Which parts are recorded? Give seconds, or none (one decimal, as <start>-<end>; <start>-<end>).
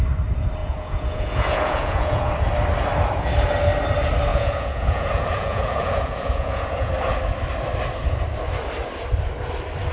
0.0-0.6; 2.3-4.3; 6.9-9.9